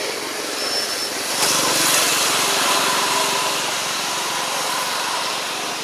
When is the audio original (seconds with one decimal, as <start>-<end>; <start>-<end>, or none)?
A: 0.0-2.1; 5.3-5.8